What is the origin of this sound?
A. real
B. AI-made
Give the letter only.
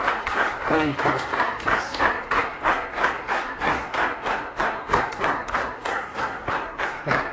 B